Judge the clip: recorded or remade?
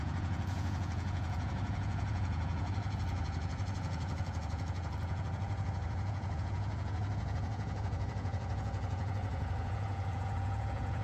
remade